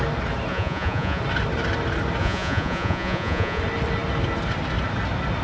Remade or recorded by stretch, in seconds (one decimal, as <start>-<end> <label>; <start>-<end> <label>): 0.0-0.5 recorded; 0.5-1.2 remade; 1.2-2.2 recorded; 2.2-3.6 remade; 3.6-5.4 recorded